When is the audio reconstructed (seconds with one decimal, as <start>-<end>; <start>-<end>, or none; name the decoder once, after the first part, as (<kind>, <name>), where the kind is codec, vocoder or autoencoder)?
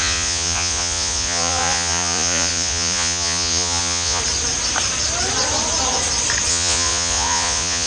0.0-4.2 (vocoder, Vocos); 6.5-7.9